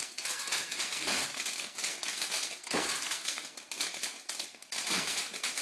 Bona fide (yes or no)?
no